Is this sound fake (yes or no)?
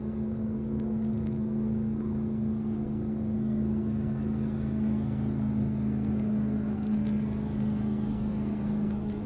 yes